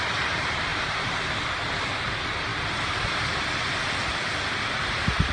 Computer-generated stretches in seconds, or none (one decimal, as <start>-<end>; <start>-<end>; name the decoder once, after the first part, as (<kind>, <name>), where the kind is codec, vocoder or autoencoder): 0.7-1.5 (vocoder, BigVGAN v2)